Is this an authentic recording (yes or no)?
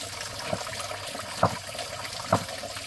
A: yes